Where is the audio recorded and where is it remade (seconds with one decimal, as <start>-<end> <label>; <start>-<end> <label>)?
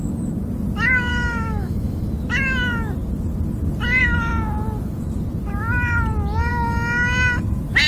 0.0-1.1 recorded; 1.1-2.1 remade; 2.1-7.9 recorded